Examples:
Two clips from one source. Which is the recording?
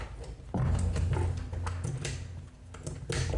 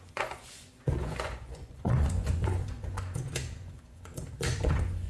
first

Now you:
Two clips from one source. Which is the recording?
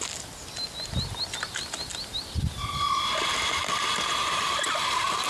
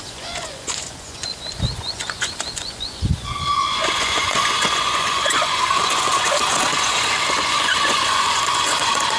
first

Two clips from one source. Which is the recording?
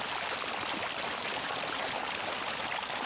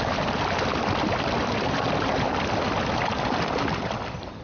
second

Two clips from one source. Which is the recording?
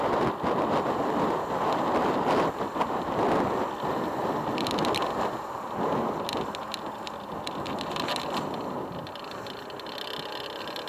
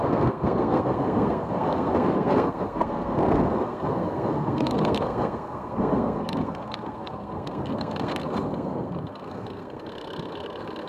first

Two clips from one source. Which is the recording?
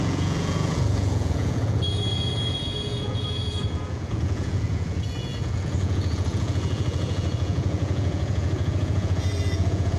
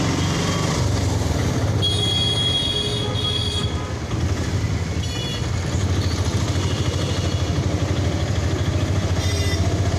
second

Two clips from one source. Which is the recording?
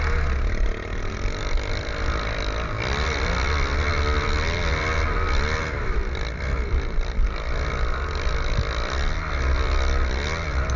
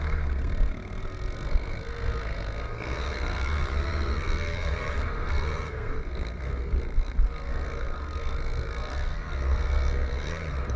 first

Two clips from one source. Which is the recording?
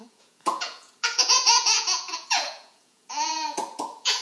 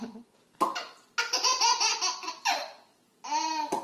second